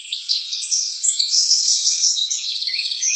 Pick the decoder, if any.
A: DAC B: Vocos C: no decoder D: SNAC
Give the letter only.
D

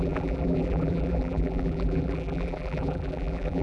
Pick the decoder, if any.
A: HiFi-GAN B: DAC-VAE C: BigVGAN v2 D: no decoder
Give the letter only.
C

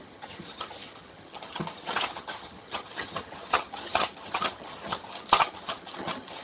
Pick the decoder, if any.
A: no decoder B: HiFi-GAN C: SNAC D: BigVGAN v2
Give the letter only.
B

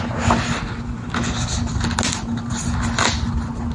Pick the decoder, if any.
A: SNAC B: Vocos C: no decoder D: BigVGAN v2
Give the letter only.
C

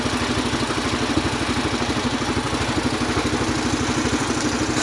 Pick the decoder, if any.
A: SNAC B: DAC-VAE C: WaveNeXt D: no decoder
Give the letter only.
D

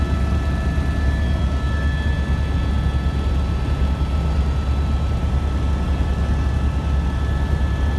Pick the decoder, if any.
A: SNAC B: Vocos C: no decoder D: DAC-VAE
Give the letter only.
C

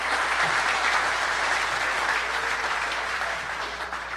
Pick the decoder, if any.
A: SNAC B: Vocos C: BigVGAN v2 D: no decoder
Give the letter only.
C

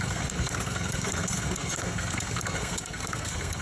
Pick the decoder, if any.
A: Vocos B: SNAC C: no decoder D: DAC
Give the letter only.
B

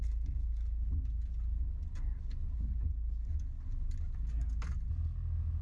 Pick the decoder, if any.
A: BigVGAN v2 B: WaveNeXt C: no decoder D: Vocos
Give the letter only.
C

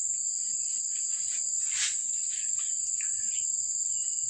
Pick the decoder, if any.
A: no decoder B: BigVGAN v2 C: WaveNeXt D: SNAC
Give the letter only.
A